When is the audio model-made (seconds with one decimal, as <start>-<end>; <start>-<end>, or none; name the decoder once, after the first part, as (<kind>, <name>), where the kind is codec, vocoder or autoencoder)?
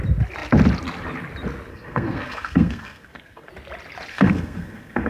1.7-3.5 (codec, SNAC); 4.1-5.1